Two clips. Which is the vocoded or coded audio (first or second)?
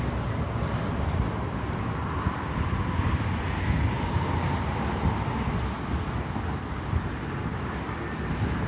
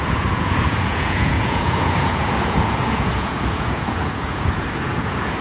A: second